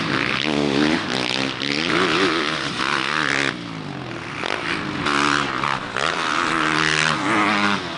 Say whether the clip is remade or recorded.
recorded